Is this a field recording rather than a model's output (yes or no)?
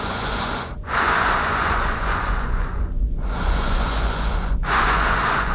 no